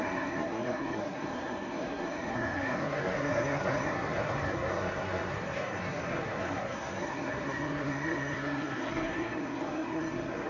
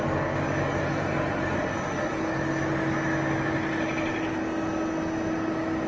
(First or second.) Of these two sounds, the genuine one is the second